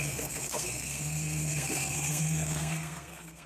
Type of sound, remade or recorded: remade